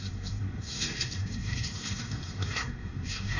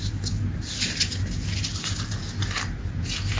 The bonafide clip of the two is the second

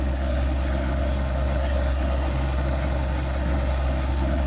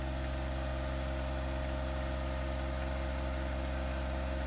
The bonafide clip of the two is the second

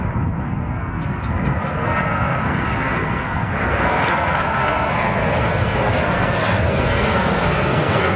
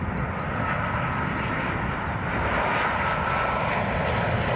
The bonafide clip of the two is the second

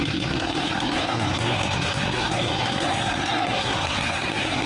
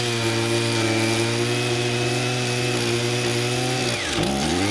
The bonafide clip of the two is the second